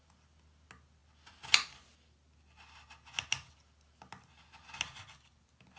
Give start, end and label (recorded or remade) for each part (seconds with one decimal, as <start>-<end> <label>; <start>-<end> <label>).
0.0-5.8 recorded